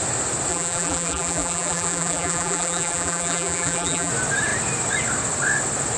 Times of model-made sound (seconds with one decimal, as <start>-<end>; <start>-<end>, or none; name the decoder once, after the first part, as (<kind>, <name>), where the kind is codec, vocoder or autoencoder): 0.5-4.1 (vocoder, BigVGAN v2)